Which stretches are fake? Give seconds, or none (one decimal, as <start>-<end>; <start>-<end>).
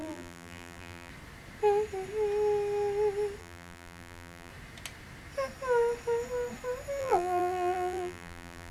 0.0-1.1; 3.4-4.5; 7.0-8.7